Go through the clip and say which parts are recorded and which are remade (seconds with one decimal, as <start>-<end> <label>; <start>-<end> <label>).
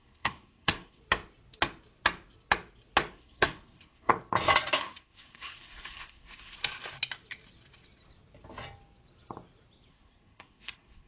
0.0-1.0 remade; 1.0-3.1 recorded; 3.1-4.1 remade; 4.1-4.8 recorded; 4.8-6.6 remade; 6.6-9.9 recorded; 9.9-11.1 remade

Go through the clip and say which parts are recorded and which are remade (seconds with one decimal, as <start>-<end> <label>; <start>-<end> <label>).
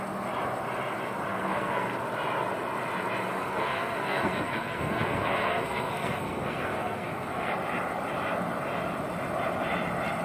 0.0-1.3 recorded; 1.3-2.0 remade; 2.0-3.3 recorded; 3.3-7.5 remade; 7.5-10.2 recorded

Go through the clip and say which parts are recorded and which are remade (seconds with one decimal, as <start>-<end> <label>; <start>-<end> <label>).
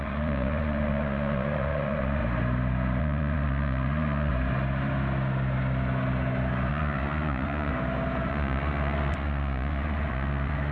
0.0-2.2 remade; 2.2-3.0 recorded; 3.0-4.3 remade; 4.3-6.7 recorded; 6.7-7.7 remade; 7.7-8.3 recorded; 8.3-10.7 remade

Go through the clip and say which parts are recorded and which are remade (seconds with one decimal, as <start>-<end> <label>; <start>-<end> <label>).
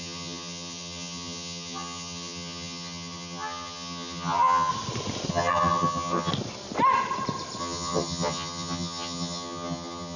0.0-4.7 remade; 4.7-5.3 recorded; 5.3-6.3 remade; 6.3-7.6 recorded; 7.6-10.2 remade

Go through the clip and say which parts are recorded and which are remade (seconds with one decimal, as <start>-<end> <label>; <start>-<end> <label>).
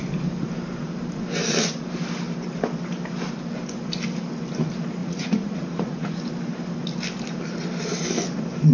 0.0-5.0 recorded; 5.0-6.2 remade; 6.2-8.7 recorded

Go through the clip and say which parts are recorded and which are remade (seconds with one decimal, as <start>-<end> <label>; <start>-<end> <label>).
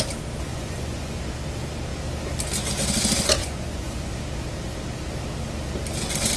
0.0-0.5 recorded; 0.5-1.2 remade; 1.2-3.4 recorded; 3.4-4.1 remade; 4.1-6.4 recorded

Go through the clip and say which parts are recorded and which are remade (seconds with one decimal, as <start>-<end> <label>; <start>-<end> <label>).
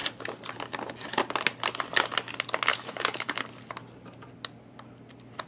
0.0-2.7 recorded; 2.7-3.3 remade; 3.3-5.5 recorded